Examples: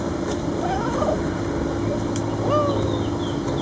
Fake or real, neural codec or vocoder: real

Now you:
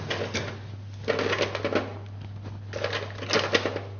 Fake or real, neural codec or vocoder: real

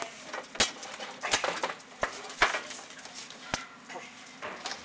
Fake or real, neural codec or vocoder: real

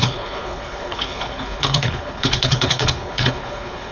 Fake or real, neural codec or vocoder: fake, codec, HILCodec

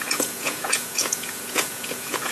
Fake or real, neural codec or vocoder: fake, vocoder, Vocos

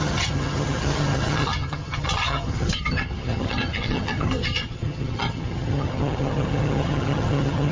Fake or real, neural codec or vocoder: fake, vocoder, HiFi-GAN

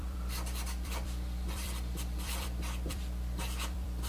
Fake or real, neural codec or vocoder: fake, vocoder, BigVGAN v2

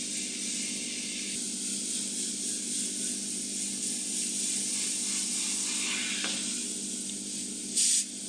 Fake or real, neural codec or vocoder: real